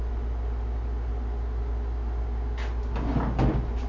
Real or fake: real